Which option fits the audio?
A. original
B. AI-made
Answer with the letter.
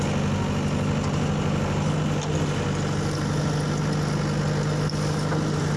A